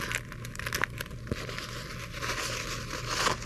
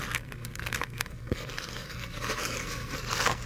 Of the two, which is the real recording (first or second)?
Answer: first